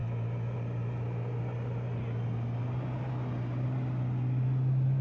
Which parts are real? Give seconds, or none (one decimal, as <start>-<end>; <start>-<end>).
0.0-5.0